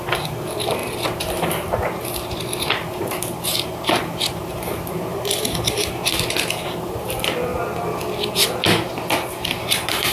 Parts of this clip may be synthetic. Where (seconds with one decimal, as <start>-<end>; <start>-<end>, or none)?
0.0-7.5; 9.3-10.1